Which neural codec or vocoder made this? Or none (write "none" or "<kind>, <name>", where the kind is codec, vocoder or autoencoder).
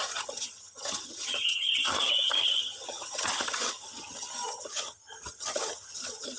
vocoder, HiFi-GAN